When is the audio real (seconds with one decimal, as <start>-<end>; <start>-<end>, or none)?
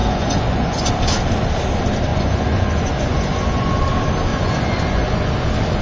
0.9-2.1; 3.7-4.3; 5.3-5.8